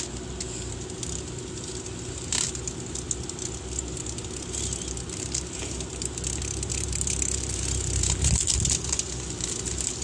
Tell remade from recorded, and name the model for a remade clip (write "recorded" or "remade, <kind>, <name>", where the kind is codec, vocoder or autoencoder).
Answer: recorded